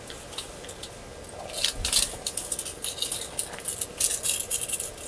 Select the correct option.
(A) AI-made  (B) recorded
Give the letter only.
B